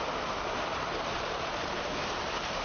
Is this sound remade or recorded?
remade